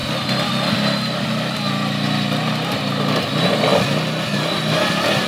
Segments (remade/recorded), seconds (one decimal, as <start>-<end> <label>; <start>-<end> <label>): 0.0-5.3 recorded